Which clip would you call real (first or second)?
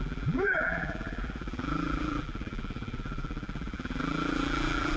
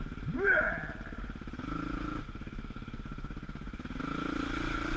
second